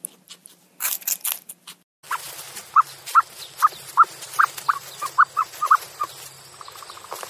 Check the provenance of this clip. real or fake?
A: real